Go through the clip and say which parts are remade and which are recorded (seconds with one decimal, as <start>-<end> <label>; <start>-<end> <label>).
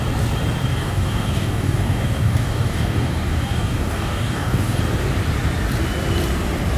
0.0-0.7 recorded; 0.7-4.8 remade; 4.8-6.8 recorded